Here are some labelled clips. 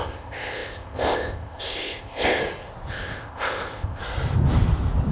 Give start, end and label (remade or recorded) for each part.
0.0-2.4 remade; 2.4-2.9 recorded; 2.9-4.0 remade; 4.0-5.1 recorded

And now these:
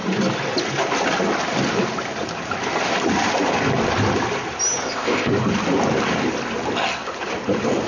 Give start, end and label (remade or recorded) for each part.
0.0-4.8 recorded; 4.8-5.3 remade; 5.3-7.9 recorded

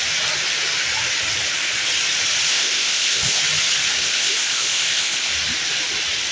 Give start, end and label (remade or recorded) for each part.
0.0-2.5 recorded; 2.5-3.4 remade; 3.4-4.0 recorded; 4.0-5.3 remade; 5.3-6.3 recorded